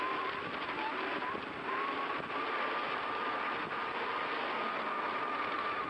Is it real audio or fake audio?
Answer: real